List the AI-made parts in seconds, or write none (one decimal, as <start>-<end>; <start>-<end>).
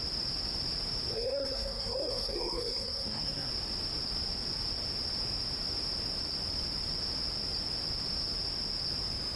1.1-3.5